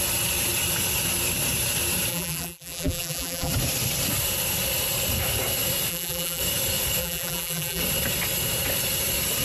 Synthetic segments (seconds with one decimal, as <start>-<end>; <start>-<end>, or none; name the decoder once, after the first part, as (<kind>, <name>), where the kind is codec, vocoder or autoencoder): 2.1-3.5 (vocoder, BigVGAN v2); 5.9-6.4; 7.0-7.8